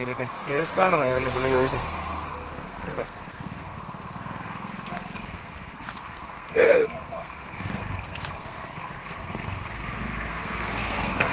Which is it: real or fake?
fake